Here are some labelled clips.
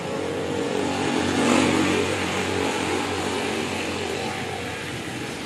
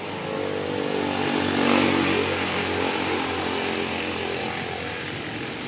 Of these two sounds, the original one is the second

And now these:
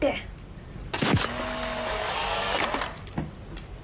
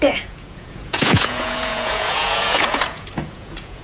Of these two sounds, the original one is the first